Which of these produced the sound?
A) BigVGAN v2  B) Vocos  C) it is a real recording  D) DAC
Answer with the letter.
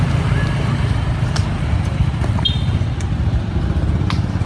C